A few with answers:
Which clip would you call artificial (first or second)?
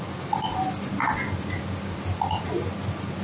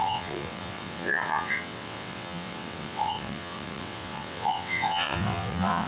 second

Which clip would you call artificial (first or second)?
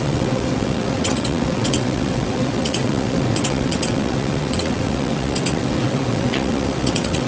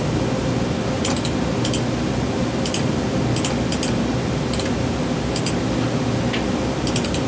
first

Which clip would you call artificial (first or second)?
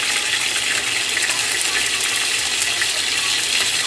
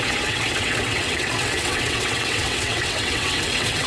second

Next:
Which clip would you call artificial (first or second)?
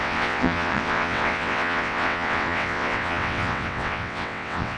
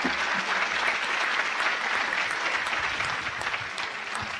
first